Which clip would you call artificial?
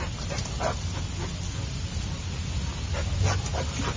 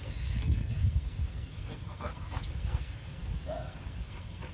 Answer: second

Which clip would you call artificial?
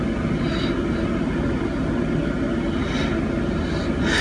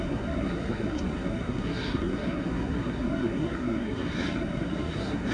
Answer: second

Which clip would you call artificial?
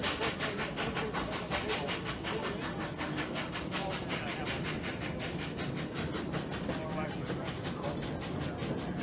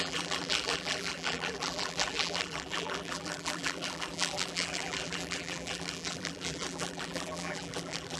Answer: second